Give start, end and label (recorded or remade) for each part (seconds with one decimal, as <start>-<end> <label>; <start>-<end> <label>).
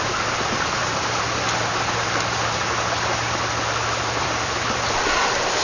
0.0-0.8 remade; 0.8-4.2 recorded; 4.2-5.6 remade